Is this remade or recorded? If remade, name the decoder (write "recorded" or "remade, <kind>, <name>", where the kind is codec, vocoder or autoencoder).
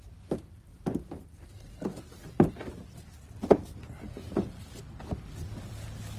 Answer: recorded